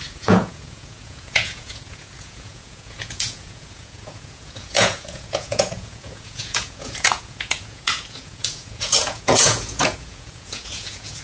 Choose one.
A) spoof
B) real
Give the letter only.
A